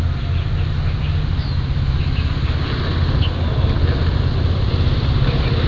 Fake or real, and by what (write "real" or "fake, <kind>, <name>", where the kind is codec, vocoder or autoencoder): real